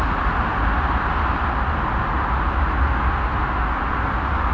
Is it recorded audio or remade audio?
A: recorded